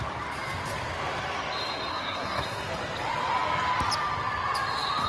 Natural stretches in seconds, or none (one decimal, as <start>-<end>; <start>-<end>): 0.0-1.9; 2.7-5.1